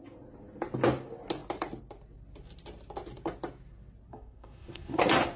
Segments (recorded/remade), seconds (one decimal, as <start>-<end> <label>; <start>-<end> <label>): 0.0-4.1 recorded; 4.1-5.0 remade; 5.0-5.4 recorded